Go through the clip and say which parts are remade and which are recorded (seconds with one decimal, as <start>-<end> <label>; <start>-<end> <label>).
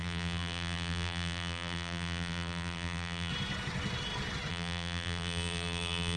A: 0.0-3.3 remade; 3.3-4.5 recorded; 4.5-6.2 remade